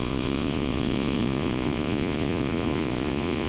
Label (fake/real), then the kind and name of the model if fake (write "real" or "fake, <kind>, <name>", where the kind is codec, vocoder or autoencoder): fake, vocoder, Vocos